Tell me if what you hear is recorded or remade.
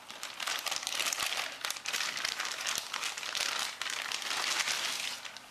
recorded